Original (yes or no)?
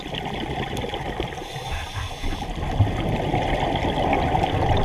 yes